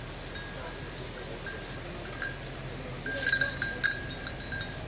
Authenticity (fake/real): real